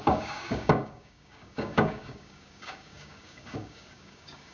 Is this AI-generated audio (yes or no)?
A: yes